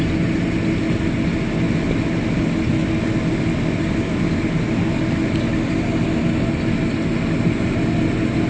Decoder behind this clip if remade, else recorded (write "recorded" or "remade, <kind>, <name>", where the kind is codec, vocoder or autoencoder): recorded